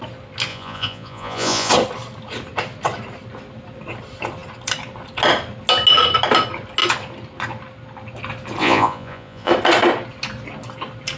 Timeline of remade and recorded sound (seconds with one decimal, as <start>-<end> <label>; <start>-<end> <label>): 0.0-0.5 recorded; 0.5-1.7 remade; 1.7-8.6 recorded; 8.6-9.5 remade; 9.5-11.2 recorded